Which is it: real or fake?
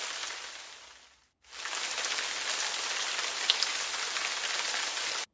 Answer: real